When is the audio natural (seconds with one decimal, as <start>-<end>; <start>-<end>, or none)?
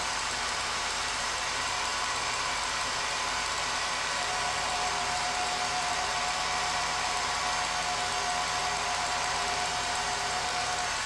7.4-8.6